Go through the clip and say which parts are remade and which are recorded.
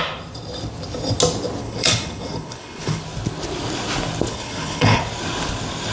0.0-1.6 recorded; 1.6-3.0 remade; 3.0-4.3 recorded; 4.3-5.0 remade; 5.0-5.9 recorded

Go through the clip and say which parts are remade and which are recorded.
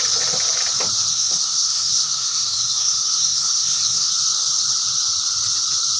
0.0-1.1 recorded; 1.1-4.1 remade; 4.1-6.0 recorded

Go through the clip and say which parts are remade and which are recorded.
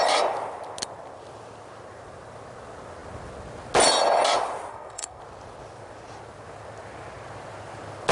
0.0-4.7 recorded; 4.7-5.2 remade; 5.2-8.1 recorded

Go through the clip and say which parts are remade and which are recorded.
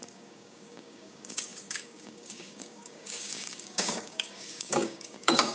0.0-5.5 remade